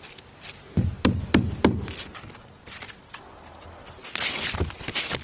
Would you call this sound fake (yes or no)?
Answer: no